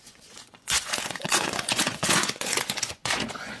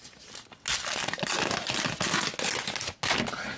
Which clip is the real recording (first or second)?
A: second